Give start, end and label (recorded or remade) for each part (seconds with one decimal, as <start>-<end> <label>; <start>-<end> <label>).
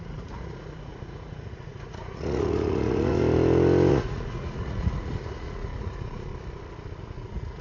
0.0-3.2 remade; 3.2-3.9 recorded; 3.9-6.3 remade; 6.3-7.0 recorded; 7.0-7.6 remade